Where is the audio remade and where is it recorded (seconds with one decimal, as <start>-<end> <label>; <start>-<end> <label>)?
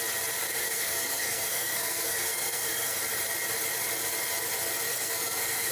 0.0-0.4 recorded; 0.4-3.0 remade; 3.0-4.9 recorded; 4.9-5.7 remade